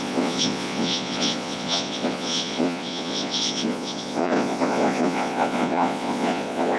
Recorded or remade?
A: remade